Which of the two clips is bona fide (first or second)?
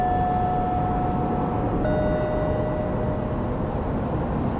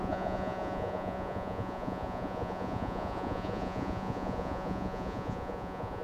first